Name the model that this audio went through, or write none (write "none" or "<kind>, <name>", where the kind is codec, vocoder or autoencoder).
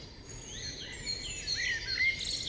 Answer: none